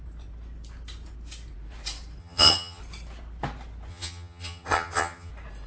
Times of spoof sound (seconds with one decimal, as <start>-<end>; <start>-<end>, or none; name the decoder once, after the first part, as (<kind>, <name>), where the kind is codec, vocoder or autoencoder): 2.2-2.8 (vocoder, HiFi-GAN); 3.9-5.3